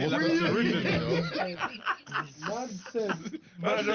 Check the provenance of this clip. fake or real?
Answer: real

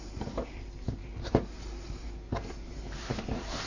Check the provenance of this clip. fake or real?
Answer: fake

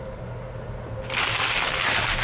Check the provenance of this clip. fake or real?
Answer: real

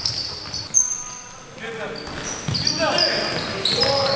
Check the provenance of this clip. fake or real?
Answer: real